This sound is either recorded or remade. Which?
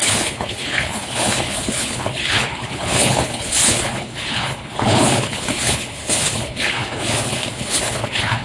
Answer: remade